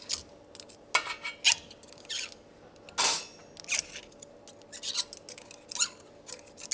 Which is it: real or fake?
real